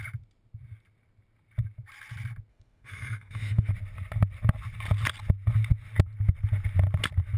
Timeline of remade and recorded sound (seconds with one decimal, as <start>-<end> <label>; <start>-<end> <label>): 0.0-2.5 recorded; 2.5-3.7 remade; 3.7-7.4 recorded